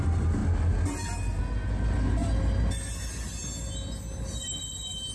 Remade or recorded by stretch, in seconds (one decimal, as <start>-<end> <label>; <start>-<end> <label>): 0.0-5.1 recorded

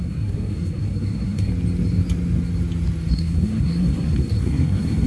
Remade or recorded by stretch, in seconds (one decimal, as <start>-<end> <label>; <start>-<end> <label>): 0.0-1.5 remade; 1.5-3.1 recorded; 3.1-5.1 remade

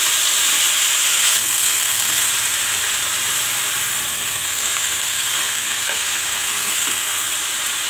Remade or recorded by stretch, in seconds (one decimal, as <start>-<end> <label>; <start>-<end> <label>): 0.0-1.1 recorded; 1.1-2.3 remade; 2.3-4.1 recorded; 4.1-7.3 remade; 7.3-7.9 recorded

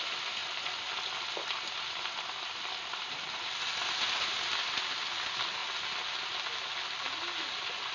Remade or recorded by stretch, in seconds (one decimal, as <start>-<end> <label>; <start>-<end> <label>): 0.0-7.9 recorded